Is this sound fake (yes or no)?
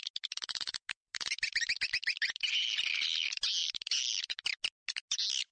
no